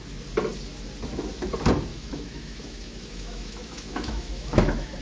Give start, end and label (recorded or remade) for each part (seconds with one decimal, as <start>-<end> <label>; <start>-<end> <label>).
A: 0.0-1.9 recorded; 1.9-5.0 remade